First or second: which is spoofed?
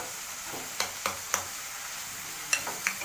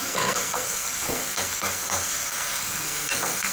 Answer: second